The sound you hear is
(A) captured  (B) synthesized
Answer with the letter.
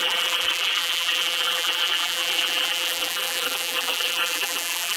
B